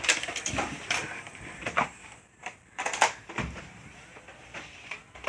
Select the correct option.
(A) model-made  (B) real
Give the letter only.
A